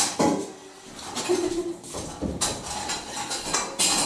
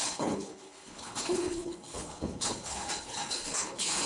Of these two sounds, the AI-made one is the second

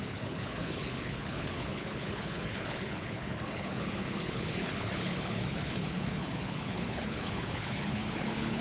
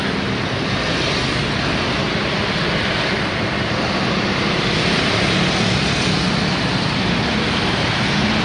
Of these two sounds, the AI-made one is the first